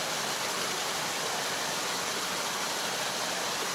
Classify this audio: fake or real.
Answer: real